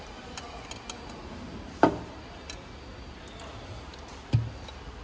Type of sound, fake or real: real